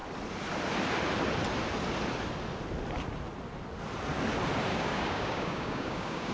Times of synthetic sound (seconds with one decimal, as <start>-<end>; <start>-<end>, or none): 4.7-6.3